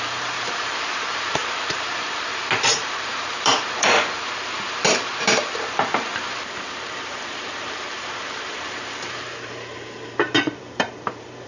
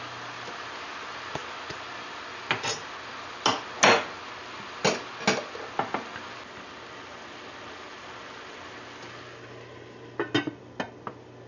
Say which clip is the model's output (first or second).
first